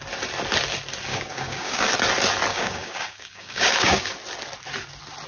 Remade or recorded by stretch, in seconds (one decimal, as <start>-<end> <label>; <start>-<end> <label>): 0.0-1.1 recorded; 1.1-1.9 remade; 1.9-2.5 recorded; 2.5-4.1 remade; 4.1-5.3 recorded